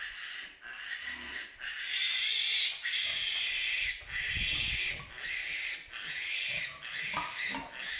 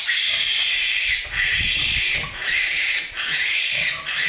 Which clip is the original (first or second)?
first